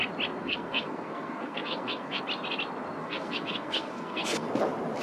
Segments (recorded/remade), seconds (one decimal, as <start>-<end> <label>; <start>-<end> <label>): 0.0-0.4 recorded; 0.4-2.2 remade; 2.2-3.0 recorded; 3.0-4.5 remade; 4.5-5.0 recorded